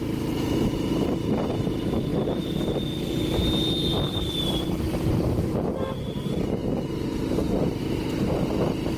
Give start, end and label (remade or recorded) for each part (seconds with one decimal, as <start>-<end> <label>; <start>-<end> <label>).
0.0-2.1 recorded; 2.1-2.8 remade; 2.8-3.9 recorded; 3.9-4.9 remade; 4.9-9.0 recorded